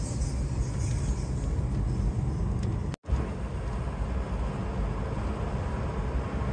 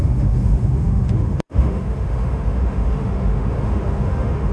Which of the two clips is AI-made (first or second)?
second